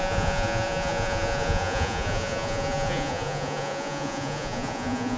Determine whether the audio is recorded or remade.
remade